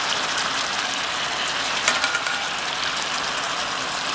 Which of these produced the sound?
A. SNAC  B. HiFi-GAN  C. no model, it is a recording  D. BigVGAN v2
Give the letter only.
C